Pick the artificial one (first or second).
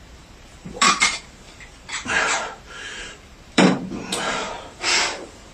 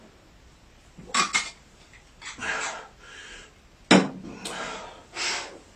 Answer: first